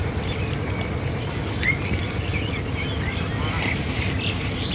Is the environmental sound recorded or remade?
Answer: recorded